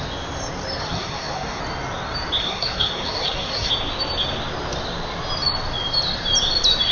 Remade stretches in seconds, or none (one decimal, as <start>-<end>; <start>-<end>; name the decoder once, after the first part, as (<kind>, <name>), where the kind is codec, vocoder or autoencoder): 0.8-1.6 (codec, SNAC); 2.4-3.7